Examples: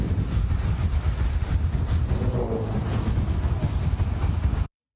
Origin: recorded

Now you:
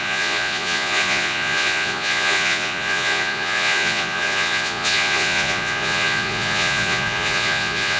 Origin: remade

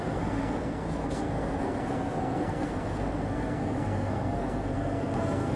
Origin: remade